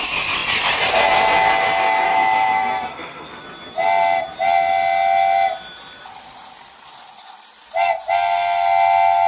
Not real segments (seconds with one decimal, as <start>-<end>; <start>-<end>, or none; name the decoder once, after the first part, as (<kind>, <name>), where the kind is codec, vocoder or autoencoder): 2.0-3.4 (codec, SNAC)